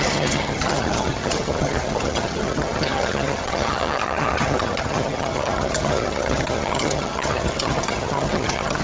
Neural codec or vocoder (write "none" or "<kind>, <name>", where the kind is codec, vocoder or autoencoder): vocoder, HiFi-GAN